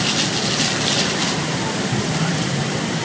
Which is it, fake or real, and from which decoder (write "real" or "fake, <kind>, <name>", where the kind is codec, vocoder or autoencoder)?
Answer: real